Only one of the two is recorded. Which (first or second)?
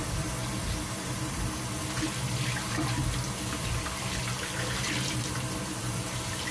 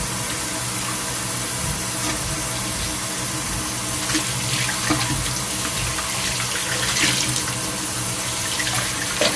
second